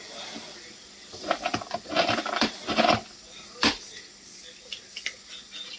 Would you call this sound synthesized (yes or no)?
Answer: yes